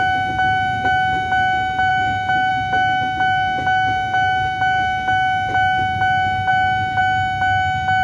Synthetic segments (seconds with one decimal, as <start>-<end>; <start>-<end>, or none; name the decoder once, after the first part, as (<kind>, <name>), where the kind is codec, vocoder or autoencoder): none